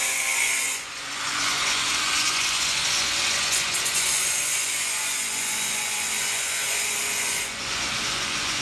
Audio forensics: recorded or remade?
remade